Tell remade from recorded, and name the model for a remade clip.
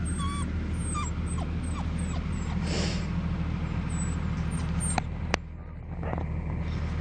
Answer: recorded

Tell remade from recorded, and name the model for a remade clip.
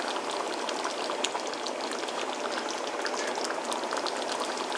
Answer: recorded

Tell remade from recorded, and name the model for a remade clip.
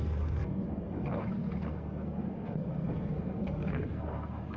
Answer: remade, codec, SNAC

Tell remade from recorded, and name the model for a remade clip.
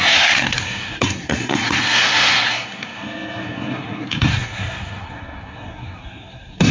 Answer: remade, codec, SNAC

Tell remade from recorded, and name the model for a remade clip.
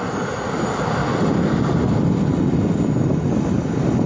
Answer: recorded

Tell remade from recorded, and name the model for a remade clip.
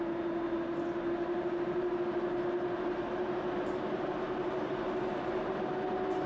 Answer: recorded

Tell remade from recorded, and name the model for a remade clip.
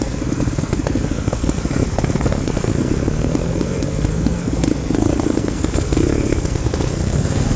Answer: remade, codec, SNAC